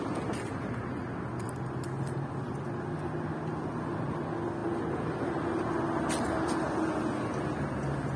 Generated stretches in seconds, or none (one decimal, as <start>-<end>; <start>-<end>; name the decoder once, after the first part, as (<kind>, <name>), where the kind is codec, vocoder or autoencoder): none

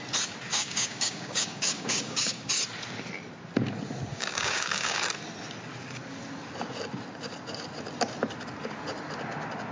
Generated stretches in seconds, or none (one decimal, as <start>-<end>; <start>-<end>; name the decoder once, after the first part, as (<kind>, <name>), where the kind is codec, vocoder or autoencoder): 0.5-2.4 (codec, DAC); 4.1-5.0

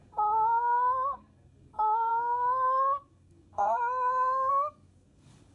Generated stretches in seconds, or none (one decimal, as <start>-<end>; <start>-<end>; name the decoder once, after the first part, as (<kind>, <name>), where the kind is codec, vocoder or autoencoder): 0.0-5.5 (codec, DAC)

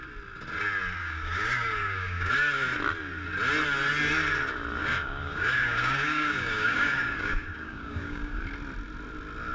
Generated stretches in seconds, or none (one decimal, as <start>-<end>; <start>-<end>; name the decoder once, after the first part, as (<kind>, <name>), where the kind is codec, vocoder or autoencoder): 1.0-2.3 (codec, DAC); 4.8-8.4

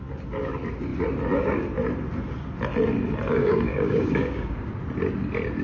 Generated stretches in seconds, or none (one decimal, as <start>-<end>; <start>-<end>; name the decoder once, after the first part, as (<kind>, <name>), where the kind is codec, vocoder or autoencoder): 3.4-4.7 (codec, DAC)

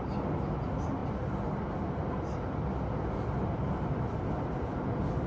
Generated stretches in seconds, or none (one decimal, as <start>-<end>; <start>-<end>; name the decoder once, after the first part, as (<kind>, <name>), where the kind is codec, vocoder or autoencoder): none

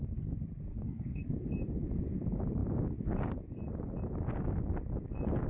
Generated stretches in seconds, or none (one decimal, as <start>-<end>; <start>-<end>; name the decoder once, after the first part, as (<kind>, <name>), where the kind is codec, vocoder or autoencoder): 0.7-1.2 (codec, DAC)

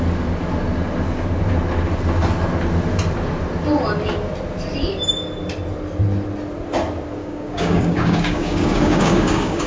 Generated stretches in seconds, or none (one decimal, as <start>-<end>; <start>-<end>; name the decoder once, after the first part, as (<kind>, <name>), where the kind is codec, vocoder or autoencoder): 7.2-9.7 (codec, DAC)